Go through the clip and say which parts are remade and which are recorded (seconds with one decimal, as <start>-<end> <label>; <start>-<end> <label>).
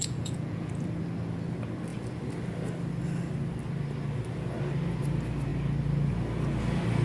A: 0.0-0.7 remade; 0.7-7.0 recorded